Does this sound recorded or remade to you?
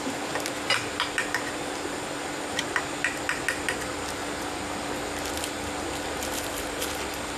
recorded